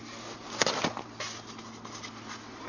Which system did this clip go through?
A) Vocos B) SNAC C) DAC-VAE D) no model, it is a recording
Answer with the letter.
D